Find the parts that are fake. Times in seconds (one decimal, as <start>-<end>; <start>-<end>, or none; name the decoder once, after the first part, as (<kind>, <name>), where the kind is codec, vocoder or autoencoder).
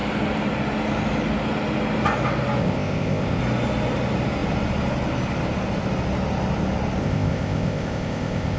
2.6-3.4 (codec, ZipCodec); 7.0-8.6